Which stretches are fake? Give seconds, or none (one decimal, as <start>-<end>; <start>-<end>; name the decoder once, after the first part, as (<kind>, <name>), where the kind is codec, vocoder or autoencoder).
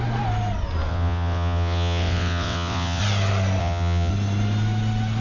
0.9-3.0 (vocoder, WaveNeXt); 3.6-4.1